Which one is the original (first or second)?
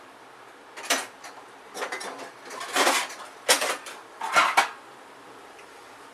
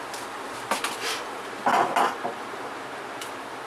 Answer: second